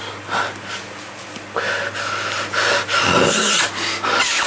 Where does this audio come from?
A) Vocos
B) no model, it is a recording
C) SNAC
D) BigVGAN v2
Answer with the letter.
B